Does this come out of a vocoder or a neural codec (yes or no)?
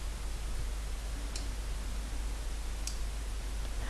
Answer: no